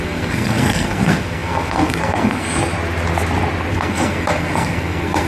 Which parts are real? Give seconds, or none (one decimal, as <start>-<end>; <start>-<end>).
2.6-3.7